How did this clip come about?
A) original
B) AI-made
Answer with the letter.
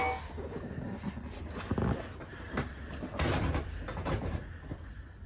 A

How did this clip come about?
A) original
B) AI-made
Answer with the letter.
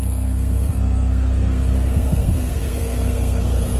B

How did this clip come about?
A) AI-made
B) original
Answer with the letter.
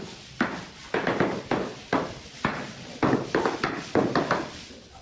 B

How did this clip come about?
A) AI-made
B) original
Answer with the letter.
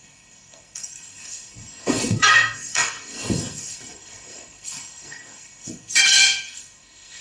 A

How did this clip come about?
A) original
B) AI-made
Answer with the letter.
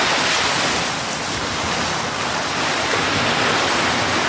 A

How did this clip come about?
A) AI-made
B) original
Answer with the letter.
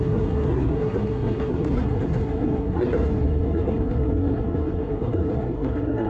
A